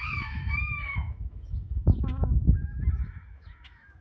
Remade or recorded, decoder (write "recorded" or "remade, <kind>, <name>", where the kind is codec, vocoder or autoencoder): remade, autoencoder, DAC-VAE